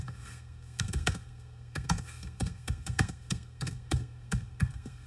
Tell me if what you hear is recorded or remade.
remade